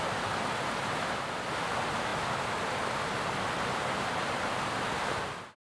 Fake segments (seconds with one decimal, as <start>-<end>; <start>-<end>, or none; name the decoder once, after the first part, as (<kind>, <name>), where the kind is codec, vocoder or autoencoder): none